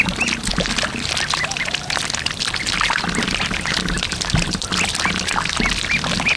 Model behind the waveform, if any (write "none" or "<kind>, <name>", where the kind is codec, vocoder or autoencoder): none